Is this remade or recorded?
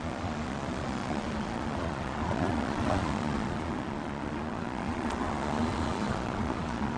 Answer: remade